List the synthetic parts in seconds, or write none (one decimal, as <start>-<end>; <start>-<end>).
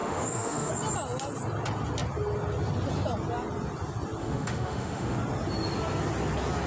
0.0-0.7; 4.2-5.2